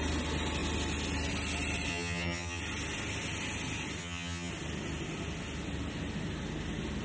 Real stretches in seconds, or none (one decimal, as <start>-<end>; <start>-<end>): 0.0-1.9; 2.6-4.0; 4.5-7.0